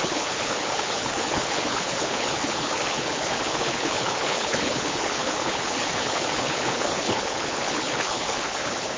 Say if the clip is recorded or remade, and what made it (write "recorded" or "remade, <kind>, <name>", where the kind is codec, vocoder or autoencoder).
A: remade, codec, HILCodec